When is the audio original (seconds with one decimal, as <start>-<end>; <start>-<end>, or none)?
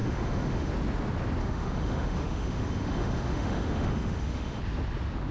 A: 0.7-1.4; 4.6-5.3